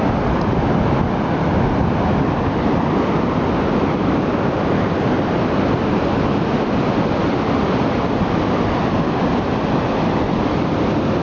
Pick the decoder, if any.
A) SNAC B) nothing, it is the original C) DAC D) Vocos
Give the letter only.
B